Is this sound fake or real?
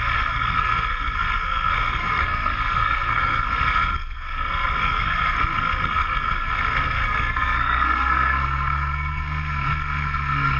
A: fake